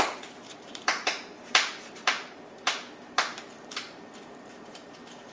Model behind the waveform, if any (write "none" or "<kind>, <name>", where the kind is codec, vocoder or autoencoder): vocoder, BigVGAN v2